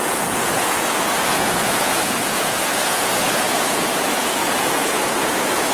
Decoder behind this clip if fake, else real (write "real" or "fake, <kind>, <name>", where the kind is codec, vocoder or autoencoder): fake, vocoder, Vocos